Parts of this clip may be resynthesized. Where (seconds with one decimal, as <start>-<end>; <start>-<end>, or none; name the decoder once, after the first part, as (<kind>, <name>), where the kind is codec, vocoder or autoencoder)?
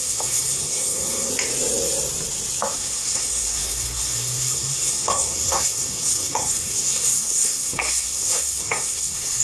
0.0-1.3 (codec, SNAC); 2.7-9.4